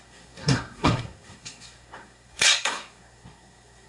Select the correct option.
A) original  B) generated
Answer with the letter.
B